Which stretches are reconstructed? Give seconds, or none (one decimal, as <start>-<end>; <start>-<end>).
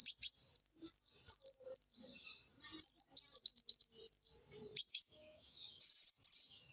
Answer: 4.9-6.7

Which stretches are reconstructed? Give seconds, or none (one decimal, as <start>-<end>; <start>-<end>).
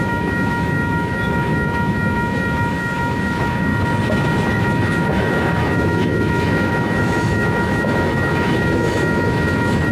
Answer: 0.0-3.7; 4.6-9.9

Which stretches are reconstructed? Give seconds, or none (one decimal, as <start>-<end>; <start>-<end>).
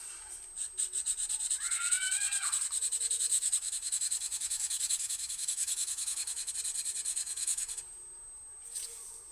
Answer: 3.3-6.5; 7.1-7.8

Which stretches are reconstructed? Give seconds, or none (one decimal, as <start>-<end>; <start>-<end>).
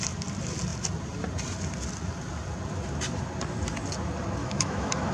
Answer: 4.4-5.1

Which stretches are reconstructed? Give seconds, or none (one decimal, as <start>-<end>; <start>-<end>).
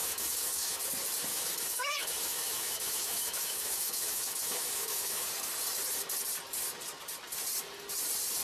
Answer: 0.0-0.8; 1.3-5.3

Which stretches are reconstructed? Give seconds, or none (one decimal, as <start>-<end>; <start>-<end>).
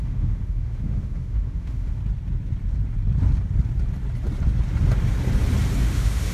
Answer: 0.0-2.0; 5.8-6.3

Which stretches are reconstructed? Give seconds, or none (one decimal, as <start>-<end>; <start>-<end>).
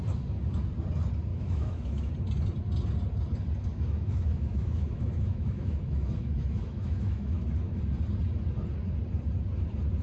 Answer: 1.3-2.1; 3.7-7.8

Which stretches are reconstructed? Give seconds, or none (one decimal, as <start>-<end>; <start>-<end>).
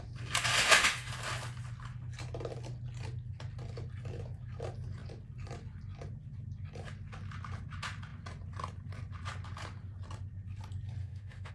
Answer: 0.6-1.1; 11.0-11.5